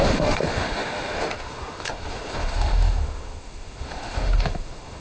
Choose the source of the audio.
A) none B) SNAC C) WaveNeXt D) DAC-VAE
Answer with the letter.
D